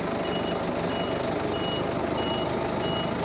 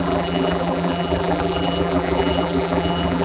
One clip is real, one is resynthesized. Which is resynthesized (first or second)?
second